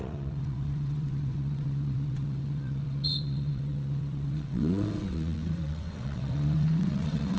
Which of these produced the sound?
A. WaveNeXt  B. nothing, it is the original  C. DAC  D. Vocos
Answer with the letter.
A